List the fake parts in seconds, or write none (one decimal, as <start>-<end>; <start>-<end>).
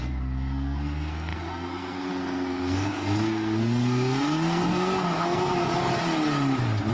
0.0-5.6